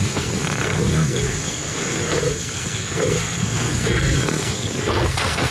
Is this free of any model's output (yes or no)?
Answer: no